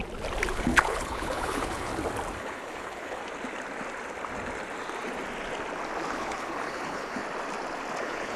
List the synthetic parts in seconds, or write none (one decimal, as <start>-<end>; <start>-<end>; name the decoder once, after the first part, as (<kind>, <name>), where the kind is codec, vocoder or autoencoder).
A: 0.5-1.9 (codec, HILCodec); 2.4-3.2; 6.1-7.2; 8.0-8.4